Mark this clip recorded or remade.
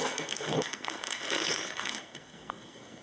remade